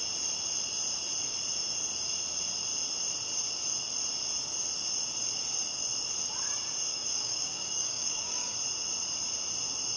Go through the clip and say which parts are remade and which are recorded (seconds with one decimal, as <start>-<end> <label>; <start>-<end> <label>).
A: 0.0-6.9 recorded; 6.9-8.6 remade; 8.6-10.0 recorded

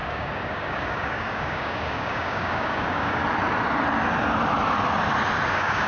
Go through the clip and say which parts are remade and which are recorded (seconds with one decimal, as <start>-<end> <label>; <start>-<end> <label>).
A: 0.0-3.2 remade; 3.2-5.5 recorded; 5.5-5.9 remade

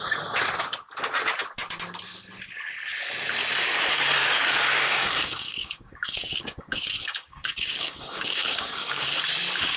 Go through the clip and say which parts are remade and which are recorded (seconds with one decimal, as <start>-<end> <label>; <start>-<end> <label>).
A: 0.0-4.2 recorded; 4.2-9.1 remade; 9.1-9.8 recorded